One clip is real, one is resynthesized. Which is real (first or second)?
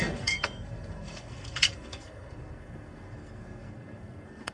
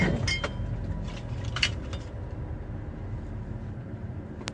second